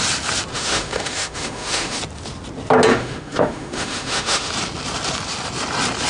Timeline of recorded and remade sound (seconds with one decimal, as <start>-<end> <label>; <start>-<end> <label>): 0.0-0.5 recorded; 0.5-2.0 remade; 2.0-2.9 recorded; 2.9-4.5 remade; 4.5-6.1 recorded